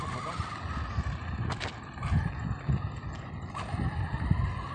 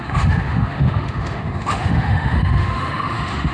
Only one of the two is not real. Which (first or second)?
second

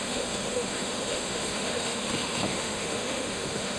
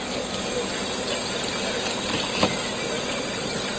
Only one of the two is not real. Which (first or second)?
first